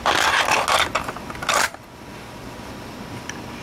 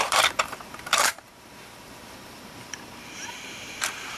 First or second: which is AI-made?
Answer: second